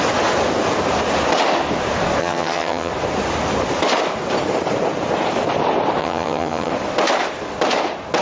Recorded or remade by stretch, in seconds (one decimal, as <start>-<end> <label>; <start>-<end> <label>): 0.0-2.2 recorded; 2.2-2.9 remade; 2.9-6.0 recorded; 6.0-6.7 remade; 6.7-8.2 recorded